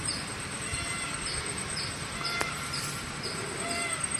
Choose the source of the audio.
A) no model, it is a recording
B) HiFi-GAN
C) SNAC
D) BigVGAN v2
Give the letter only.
A